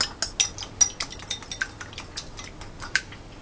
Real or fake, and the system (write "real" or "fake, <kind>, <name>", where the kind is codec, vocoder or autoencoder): real